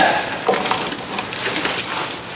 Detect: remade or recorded recorded